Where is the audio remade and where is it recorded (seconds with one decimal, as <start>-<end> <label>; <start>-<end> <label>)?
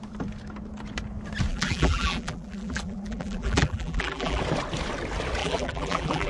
0.0-1.5 recorded; 1.5-4.4 remade; 4.4-5.4 recorded; 5.4-6.3 remade